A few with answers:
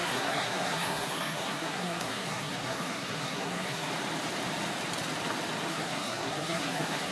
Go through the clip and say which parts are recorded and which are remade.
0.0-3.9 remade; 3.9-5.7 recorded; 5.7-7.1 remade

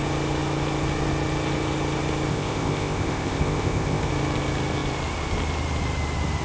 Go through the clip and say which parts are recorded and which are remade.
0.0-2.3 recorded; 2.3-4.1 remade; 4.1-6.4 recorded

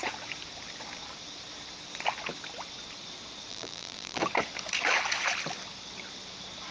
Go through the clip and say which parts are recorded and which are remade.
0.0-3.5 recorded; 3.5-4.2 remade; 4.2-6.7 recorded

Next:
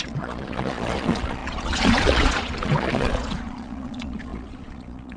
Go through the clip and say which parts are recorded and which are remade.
0.0-5.2 remade

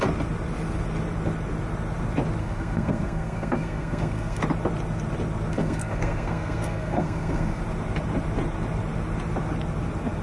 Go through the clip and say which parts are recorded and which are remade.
0.0-2.4 recorded; 2.4-4.4 remade; 4.4-5.5 recorded; 5.5-7.6 remade; 7.6-10.2 recorded

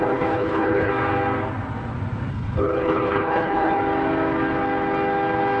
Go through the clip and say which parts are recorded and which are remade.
0.0-0.9 remade; 0.9-2.3 recorded; 2.3-3.8 remade; 3.8-5.6 recorded

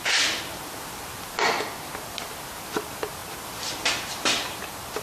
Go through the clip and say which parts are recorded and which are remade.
0.0-5.0 recorded